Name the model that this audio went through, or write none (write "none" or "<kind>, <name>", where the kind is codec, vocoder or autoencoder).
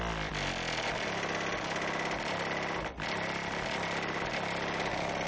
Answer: none